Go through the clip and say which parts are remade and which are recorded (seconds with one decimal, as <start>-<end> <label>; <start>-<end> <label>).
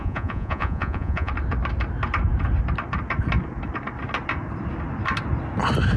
0.0-1.3 remade; 1.3-6.0 recorded